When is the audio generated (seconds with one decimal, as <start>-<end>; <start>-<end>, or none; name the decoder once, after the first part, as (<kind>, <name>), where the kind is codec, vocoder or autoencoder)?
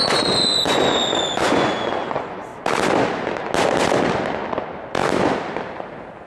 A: 0.0-2.5 (vocoder, Vocos)